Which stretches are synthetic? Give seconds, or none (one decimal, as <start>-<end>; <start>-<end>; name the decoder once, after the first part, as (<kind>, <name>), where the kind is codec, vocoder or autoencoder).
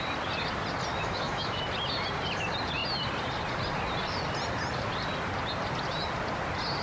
0.9-1.7 (autoencoder, DAC-VAE)